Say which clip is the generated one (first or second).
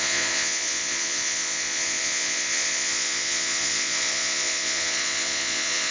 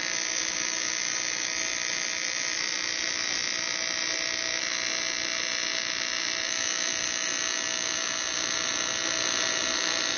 first